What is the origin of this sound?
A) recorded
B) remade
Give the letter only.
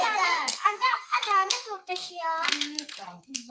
B